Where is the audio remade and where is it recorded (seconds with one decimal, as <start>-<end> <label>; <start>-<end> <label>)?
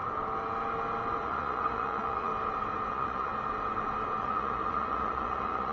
0.0-1.2 recorded; 1.2-2.3 remade; 2.3-2.9 recorded; 2.9-3.3 remade; 3.3-4.2 recorded; 4.2-5.7 remade